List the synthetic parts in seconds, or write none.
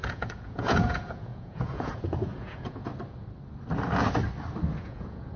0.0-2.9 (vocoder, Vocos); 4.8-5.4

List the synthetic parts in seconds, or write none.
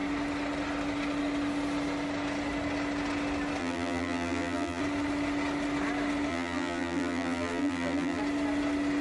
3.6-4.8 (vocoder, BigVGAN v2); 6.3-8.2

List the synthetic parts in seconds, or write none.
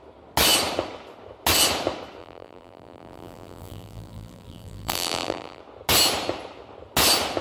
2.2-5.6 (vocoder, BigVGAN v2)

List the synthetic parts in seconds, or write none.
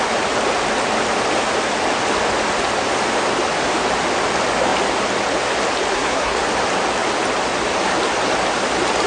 5.9-6.4 (codec, SNAC)